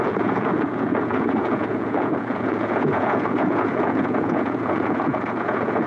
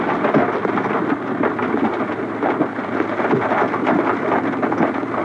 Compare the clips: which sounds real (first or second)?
second